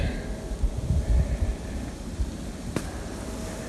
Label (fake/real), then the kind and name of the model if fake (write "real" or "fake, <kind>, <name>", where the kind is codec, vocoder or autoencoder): real